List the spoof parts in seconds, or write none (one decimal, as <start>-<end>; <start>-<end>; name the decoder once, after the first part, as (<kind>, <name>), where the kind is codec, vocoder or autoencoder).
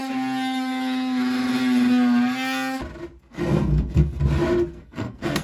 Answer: 3.2-4.2 (codec, SNAC); 4.7-5.4